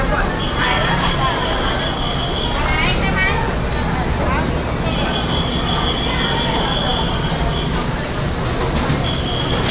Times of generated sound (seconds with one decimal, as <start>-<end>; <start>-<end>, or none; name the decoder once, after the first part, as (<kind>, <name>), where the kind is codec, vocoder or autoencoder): none

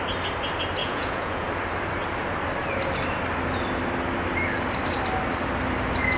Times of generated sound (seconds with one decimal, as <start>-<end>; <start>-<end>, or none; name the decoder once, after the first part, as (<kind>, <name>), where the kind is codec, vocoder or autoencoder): 0.8-1.5 (vocoder, Vocos)

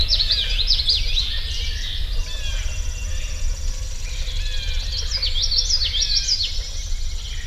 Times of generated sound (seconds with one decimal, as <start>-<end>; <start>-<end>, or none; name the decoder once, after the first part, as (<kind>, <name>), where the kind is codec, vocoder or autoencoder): 0.0-0.8 (vocoder, Vocos)

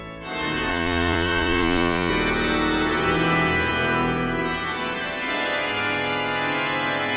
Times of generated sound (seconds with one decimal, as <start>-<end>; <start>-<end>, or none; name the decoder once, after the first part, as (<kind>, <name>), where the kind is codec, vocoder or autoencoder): 0.7-2.1 (vocoder, Vocos)